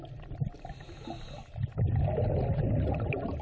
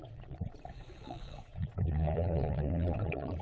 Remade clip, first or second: second